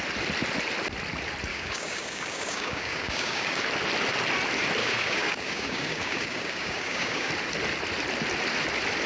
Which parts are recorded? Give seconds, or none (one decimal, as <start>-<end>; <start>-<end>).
0.0-1.5; 3.6-4.8; 7.3-9.1